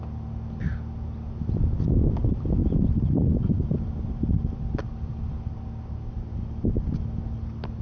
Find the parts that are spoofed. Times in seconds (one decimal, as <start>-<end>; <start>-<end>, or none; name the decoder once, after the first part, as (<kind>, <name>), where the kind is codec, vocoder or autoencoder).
none